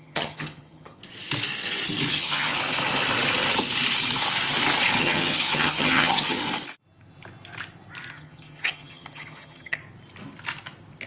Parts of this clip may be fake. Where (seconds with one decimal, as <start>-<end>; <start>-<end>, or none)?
0.0-1.0; 2.1-2.5; 5.0-6.4; 8.1-9.8